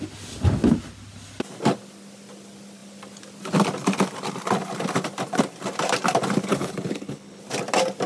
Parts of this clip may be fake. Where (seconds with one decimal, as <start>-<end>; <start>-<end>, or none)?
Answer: 6.5-7.4